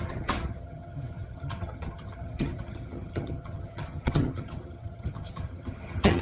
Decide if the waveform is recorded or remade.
remade